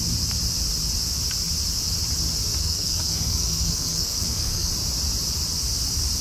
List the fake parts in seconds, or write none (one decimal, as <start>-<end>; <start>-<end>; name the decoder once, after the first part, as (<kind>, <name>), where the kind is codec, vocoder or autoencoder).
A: 2.6-4.7 (codec, SNAC)